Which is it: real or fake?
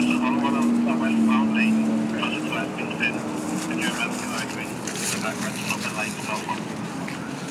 real